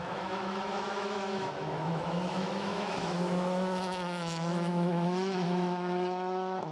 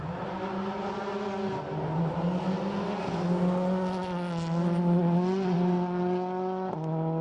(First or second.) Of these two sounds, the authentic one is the second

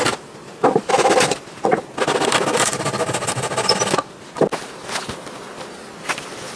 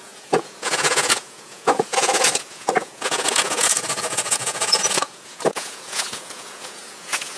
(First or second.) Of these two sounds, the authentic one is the first